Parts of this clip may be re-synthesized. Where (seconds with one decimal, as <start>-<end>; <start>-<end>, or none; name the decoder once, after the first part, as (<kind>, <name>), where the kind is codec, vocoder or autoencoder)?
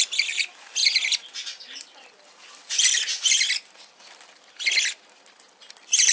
none